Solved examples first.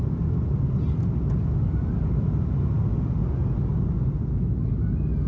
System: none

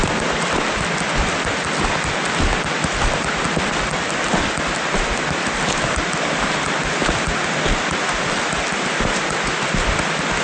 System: none